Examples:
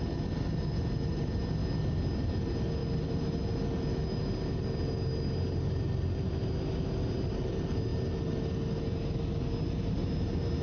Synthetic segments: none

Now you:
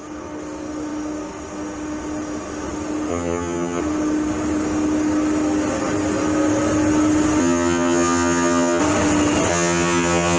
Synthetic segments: 3.1-3.8; 7.4-8.8; 9.5-10.4